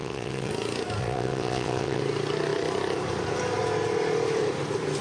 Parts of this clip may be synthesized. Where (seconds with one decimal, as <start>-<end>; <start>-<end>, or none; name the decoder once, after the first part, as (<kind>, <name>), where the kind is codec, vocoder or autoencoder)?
0.0-0.5 (vocoder, WaveNeXt); 1.0-2.0